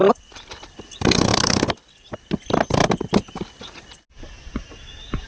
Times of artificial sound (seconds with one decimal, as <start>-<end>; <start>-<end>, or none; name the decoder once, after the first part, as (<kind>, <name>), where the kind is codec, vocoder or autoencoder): none